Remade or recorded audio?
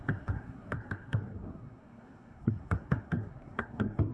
remade